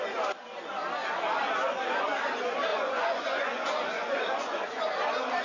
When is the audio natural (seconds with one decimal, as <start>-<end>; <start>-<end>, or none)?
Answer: 0.0-2.7; 4.8-5.4